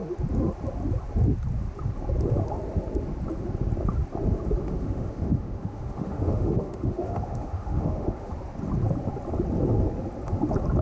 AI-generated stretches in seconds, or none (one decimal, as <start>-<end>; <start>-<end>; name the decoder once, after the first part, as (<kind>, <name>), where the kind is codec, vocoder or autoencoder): 4.6-8.3 (autoencoder, DAC-VAE)